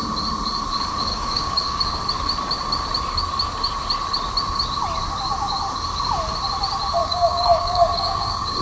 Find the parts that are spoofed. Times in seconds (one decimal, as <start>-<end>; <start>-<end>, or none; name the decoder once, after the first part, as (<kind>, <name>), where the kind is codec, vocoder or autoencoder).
1.1-2.0 (codec, DAC); 7.0-8.6